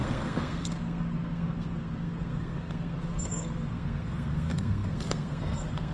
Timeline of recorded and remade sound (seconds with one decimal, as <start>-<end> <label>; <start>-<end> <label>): 0.0-5.9 remade